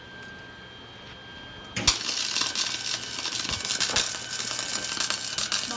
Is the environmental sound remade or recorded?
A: recorded